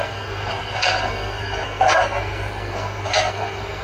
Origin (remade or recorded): remade